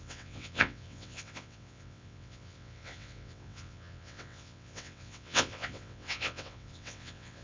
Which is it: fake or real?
fake